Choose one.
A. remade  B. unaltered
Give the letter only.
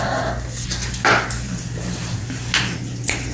B